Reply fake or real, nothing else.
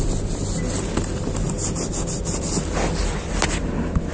real